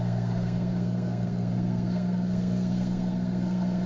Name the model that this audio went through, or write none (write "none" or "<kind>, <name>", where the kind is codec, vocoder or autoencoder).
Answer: codec, SNAC